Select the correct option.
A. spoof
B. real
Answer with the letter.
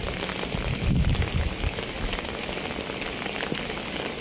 B